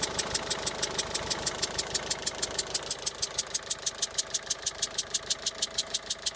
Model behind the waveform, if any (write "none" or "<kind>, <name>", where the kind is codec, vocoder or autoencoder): none